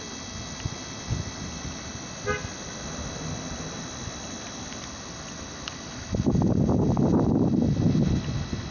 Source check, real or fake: real